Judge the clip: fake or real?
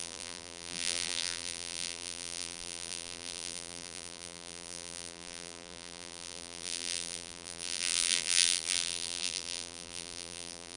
fake